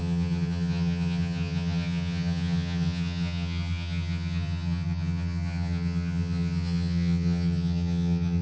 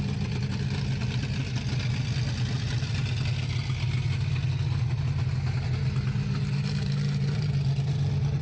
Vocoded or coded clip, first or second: first